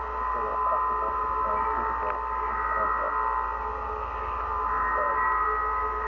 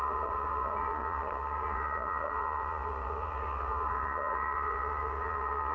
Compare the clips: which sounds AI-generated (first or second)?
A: second